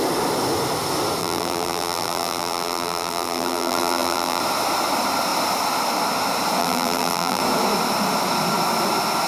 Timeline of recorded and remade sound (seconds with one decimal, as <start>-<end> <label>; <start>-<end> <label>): 0.0-1.2 recorded; 1.2-4.4 remade; 4.4-6.6 recorded; 6.6-7.4 remade; 7.4-9.3 recorded